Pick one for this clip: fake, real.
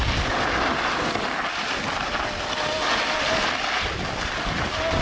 real